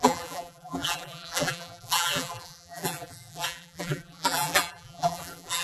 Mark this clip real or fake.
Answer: fake